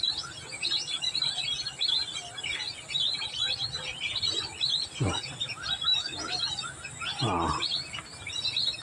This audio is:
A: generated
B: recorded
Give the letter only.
B